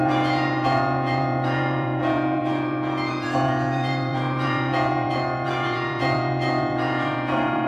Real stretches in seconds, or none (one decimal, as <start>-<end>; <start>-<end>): none